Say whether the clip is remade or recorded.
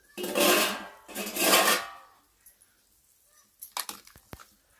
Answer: recorded